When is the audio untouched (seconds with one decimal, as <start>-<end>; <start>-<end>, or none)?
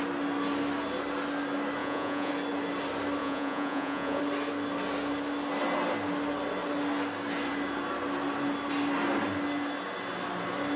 0.0-1.8; 2.3-3.2; 4.2-10.8